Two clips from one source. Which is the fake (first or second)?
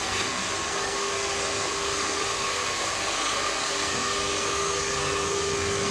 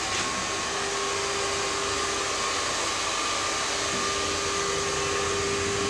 first